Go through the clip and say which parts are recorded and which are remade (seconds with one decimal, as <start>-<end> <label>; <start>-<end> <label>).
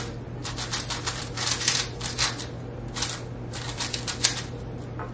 0.0-5.1 recorded